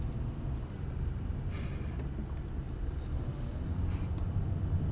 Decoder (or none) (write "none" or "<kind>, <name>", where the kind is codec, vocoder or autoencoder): none